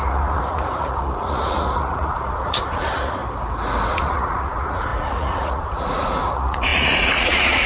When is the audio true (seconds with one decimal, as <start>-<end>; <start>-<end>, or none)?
3.2-3.9